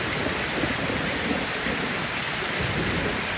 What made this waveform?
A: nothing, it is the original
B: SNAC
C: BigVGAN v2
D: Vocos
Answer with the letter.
A